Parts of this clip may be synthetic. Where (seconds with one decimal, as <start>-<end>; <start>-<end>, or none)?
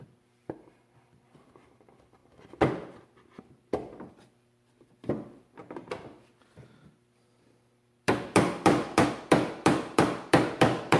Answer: 0.0-2.2; 4.1-5.6; 7.5-11.0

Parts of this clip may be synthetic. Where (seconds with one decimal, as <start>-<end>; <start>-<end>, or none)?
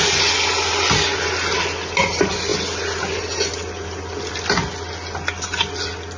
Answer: none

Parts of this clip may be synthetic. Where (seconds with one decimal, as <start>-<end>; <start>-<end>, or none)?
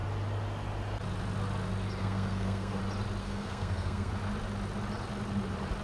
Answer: 2.0-2.8; 3.2-4.1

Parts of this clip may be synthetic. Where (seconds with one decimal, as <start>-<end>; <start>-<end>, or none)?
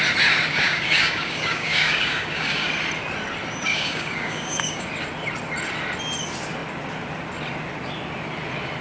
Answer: 0.5-2.7; 3.7-4.9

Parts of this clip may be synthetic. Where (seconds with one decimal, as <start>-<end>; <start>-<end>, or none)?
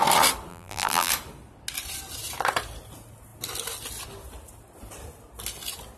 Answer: 0.5-1.1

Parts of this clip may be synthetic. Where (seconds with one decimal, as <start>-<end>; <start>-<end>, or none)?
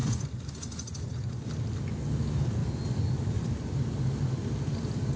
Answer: 0.0-1.5